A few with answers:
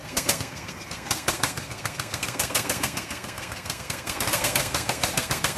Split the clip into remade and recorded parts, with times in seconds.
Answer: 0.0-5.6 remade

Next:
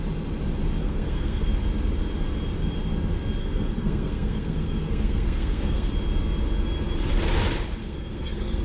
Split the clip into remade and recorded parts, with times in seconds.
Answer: 0.0-0.8 recorded; 0.8-1.5 remade; 1.5-3.4 recorded; 3.4-5.9 remade; 5.9-7.8 recorded; 7.8-8.6 remade

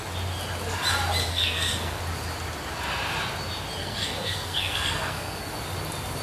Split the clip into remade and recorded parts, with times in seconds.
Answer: 0.0-1.3 recorded; 1.3-2.0 remade; 2.0-3.8 recorded; 3.8-5.5 remade; 5.5-6.2 recorded